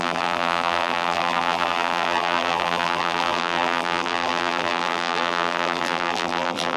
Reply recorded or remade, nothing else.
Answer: remade